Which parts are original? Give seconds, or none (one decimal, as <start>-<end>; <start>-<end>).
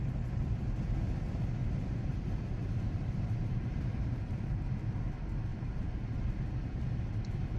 0.0-1.6; 4.6-5.5; 6.1-7.6